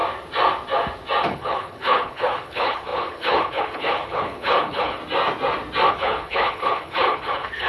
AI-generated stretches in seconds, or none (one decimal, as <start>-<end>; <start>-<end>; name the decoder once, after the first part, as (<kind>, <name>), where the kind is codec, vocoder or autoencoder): 1.2-5.0 (codec, HILCodec); 5.9-7.7